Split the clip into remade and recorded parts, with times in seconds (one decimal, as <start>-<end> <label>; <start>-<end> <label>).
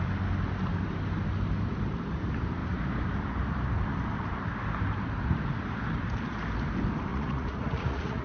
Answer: 0.0-7.1 recorded; 7.1-8.2 remade